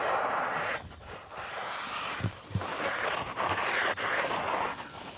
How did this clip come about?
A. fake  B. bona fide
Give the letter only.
B